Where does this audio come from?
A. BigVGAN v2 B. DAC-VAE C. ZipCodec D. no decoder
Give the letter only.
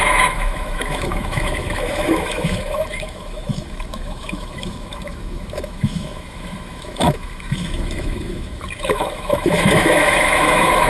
B